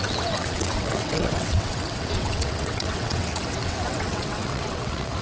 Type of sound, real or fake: fake